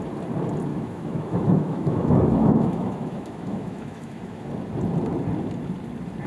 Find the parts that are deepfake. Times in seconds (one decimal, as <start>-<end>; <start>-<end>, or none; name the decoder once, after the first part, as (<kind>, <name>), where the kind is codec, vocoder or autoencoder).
0.7-4.5 (autoencoder, DAC-VAE)